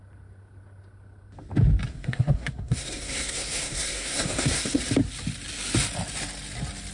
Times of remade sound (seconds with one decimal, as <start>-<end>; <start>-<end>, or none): 1.9-4.8